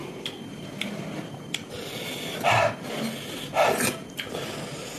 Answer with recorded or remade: recorded